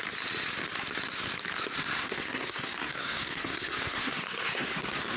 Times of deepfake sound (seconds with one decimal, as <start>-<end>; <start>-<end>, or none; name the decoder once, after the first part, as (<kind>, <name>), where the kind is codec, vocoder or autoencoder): 1.8-5.2 (codec, SNAC)